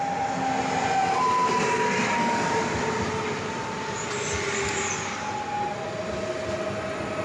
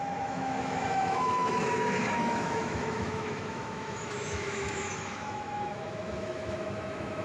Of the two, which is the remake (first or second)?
second